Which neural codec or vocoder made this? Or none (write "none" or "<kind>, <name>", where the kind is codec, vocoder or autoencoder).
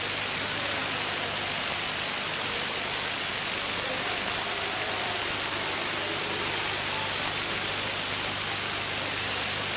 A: none